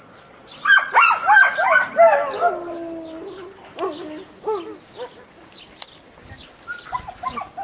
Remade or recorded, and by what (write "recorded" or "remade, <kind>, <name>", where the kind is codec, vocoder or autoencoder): recorded